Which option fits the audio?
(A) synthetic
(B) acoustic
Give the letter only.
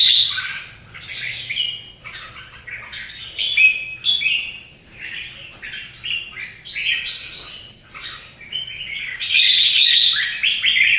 B